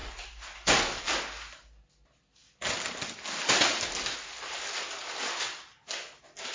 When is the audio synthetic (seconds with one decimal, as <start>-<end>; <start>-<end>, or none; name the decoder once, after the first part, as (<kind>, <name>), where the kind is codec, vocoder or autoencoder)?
none